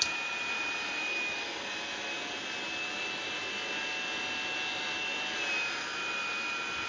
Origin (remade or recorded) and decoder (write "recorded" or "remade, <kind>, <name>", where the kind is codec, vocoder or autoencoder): recorded